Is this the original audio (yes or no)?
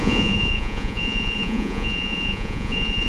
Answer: no